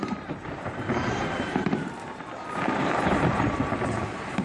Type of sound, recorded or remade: remade